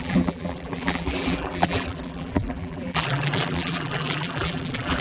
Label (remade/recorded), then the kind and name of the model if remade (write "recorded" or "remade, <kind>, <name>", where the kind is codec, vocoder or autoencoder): remade, vocoder, BigVGAN v2